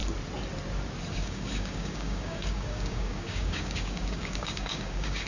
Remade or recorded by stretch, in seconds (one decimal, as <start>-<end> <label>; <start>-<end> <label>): 0.0-1.1 recorded; 1.1-5.3 remade